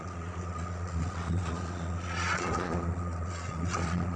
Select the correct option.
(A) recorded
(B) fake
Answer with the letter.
B